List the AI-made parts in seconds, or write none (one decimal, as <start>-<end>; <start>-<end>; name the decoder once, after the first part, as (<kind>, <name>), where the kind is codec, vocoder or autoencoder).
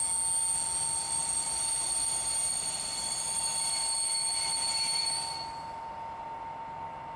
1.2-2.5 (vocoder, BigVGAN v2); 4.5-5.0